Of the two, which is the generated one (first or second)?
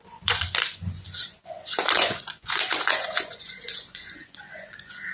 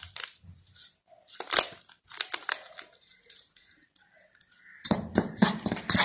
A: first